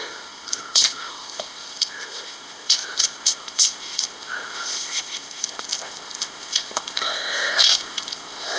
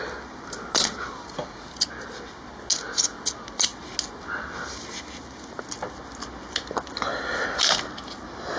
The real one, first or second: second